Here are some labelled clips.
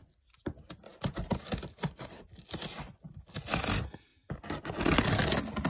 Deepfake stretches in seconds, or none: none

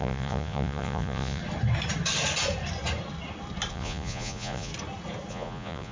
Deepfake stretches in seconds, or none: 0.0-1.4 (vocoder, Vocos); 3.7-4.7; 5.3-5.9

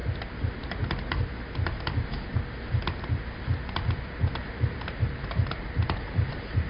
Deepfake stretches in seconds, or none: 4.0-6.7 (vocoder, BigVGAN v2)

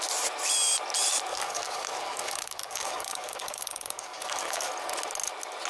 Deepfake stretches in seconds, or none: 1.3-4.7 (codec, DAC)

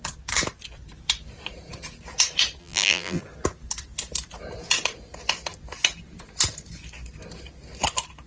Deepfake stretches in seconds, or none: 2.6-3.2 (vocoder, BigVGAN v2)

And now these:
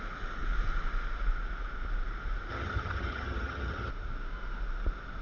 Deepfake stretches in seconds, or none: 2.5-3.9 (vocoder, HiFi-GAN)

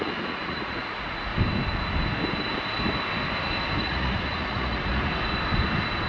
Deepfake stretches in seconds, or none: 0.0-1.3 (vocoder, Vocos); 3.8-5.1